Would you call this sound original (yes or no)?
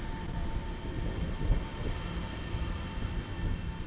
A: yes